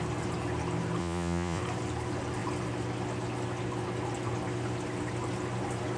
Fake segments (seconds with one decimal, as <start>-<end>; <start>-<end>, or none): 1.0-1.6